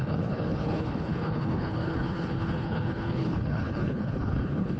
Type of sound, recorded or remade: remade